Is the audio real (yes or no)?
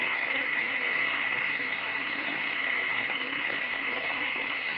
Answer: no